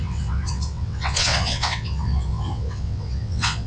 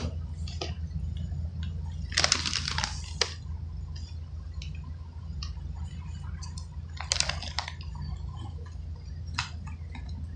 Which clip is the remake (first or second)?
first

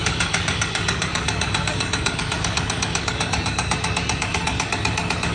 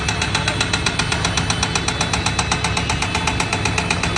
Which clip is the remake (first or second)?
first